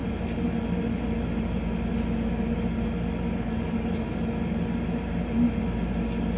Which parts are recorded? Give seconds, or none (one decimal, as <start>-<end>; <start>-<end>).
0.0-6.4